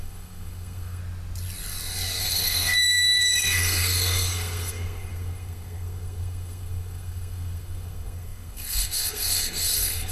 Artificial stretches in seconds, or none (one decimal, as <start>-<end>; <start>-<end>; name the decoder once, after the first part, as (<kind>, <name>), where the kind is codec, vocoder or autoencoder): 0.0-1.0 (codec, SNAC); 2.2-10.1